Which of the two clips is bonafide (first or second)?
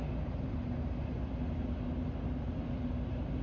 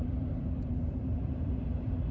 first